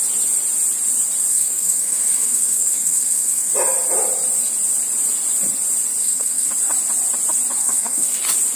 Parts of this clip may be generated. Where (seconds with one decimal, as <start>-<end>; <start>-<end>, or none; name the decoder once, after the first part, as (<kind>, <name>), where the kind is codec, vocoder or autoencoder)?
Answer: 1.3-3.5 (codec, SNAC); 6.0-6.5; 7.6-8.2